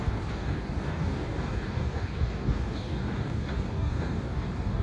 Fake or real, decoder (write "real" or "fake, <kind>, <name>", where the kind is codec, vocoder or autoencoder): fake, codec, DAC